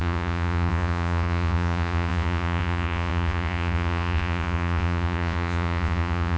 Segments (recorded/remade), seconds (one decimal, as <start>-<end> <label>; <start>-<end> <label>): 0.0-6.4 remade